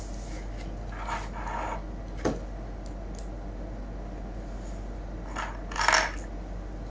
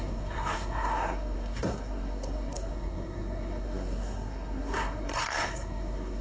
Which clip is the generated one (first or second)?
second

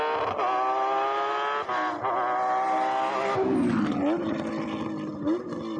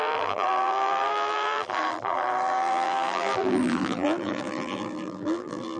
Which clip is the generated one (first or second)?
second